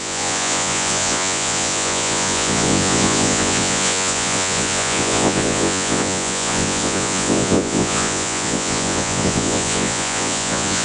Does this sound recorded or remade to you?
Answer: remade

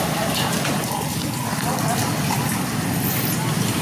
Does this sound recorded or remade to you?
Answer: recorded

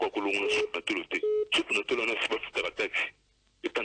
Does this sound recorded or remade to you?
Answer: recorded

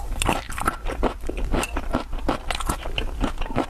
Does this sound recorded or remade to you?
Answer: recorded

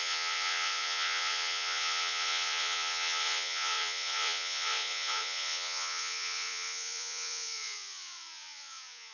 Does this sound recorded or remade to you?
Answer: remade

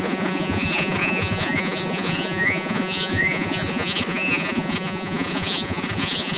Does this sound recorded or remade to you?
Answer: remade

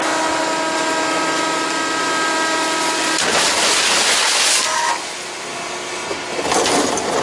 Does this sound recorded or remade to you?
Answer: recorded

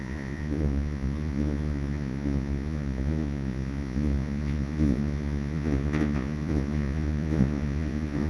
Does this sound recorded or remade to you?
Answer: remade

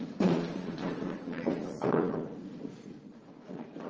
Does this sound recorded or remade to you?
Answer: remade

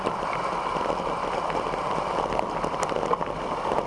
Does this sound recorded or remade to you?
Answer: recorded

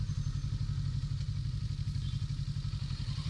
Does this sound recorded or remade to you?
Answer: recorded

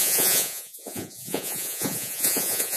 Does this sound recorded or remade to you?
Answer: remade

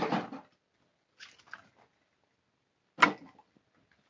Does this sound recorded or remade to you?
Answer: recorded